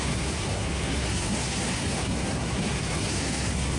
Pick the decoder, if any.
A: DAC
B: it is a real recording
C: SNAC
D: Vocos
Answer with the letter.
C